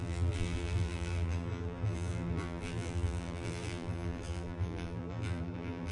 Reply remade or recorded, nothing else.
remade